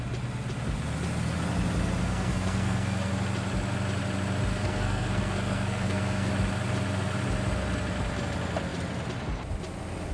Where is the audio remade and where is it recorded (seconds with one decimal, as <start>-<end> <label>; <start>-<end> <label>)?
0.0-2.0 recorded; 2.0-3.1 remade; 3.1-4.5 recorded; 4.5-6.3 remade; 6.3-10.1 recorded